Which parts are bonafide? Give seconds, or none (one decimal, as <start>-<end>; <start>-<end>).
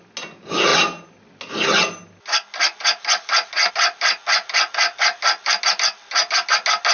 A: 0.0-6.9